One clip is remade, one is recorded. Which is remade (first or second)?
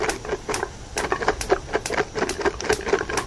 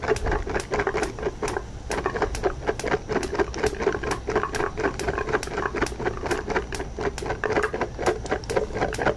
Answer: first